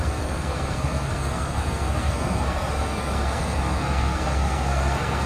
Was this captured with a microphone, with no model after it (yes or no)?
no